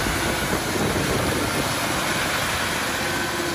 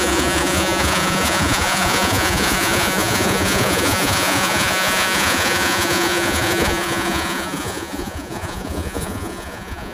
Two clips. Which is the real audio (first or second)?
first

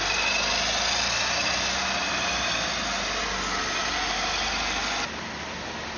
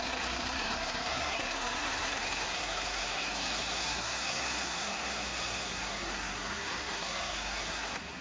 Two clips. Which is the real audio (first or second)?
first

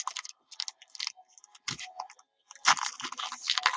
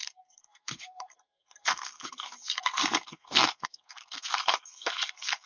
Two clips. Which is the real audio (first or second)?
first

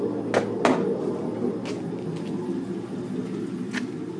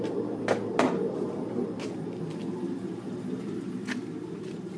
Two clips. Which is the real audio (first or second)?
first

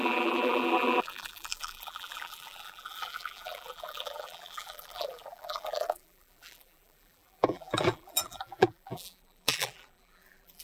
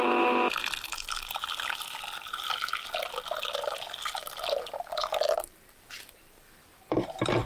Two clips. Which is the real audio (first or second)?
second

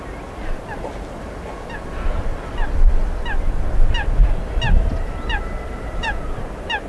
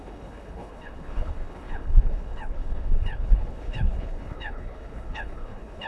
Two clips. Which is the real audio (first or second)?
first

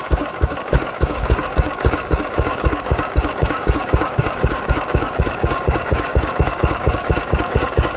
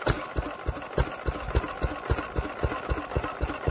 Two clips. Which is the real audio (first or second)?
second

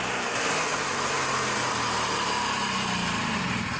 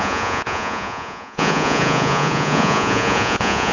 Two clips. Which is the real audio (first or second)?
first